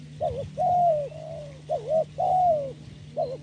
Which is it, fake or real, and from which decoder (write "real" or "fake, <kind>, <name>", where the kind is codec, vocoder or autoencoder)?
real